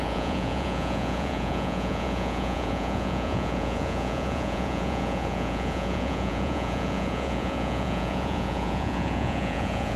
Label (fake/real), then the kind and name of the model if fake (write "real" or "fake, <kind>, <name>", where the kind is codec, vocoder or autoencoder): fake, vocoder, Vocos